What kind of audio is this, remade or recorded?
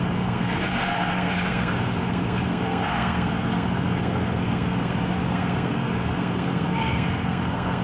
remade